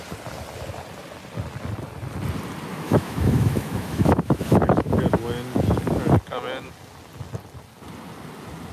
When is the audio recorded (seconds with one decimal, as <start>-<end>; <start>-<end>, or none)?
0.0-2.7; 4.9-8.7